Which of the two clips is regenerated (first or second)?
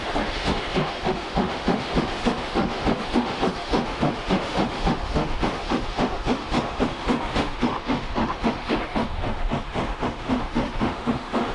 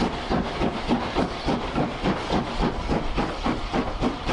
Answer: first